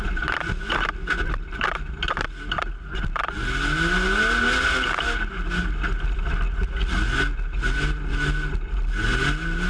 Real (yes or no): yes